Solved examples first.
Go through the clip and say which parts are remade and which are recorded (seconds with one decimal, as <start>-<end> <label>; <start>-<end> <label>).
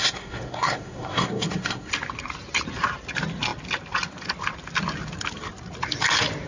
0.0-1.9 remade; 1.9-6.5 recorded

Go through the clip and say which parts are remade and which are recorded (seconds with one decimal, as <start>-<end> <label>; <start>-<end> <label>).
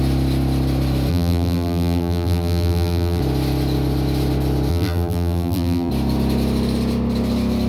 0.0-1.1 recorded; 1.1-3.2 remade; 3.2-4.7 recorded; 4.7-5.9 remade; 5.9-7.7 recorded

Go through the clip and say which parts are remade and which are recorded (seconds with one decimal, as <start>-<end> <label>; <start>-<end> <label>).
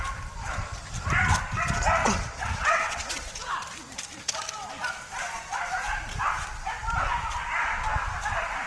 0.0-2.0 recorded; 2.0-3.3 remade; 3.3-8.7 recorded